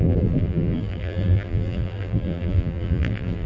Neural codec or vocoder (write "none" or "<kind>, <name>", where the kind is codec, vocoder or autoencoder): vocoder, BigVGAN v2